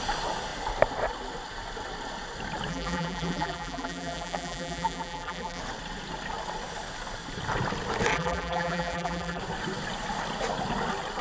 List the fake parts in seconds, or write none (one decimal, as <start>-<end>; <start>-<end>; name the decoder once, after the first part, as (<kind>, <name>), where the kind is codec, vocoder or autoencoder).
2.7-5.6 (vocoder, BigVGAN v2); 8.1-9.4